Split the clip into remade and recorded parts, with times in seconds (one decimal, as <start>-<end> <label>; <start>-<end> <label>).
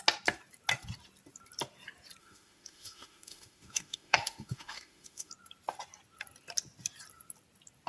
0.0-2.2 recorded; 2.2-5.3 remade; 5.3-7.9 recorded